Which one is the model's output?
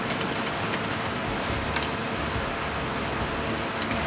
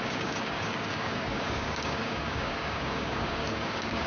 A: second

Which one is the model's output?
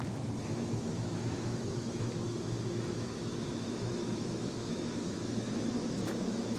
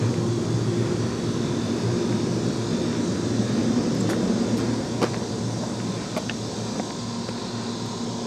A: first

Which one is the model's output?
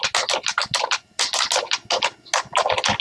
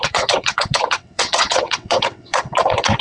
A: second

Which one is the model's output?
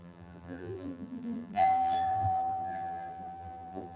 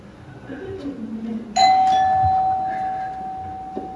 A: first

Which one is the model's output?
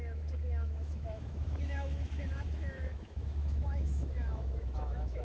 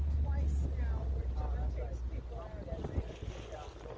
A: first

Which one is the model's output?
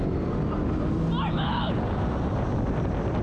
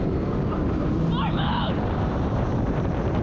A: second